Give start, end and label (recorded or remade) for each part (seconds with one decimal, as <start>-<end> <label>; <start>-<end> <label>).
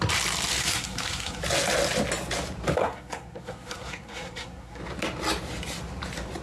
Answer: 0.0-0.6 recorded; 0.6-1.4 remade; 1.4-2.8 recorded; 2.8-4.8 remade; 4.8-6.4 recorded